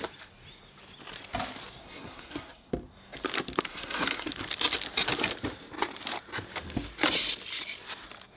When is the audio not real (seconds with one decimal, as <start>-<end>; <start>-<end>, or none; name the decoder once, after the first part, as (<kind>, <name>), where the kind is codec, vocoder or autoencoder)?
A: 1.8-2.7 (codec, SNAC); 3.7-4.3